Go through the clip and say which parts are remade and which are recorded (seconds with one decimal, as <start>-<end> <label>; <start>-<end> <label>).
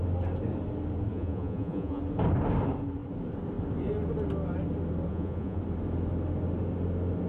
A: 0.0-1.1 recorded; 1.1-2.0 remade; 2.0-5.1 recorded; 5.1-5.6 remade; 5.6-7.3 recorded